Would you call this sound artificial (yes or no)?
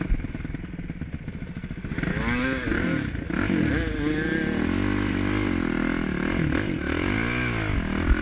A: no